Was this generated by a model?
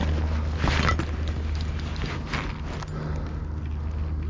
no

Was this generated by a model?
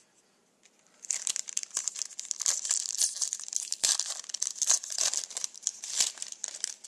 yes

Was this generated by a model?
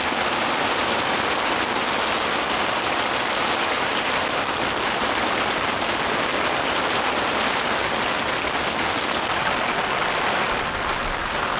no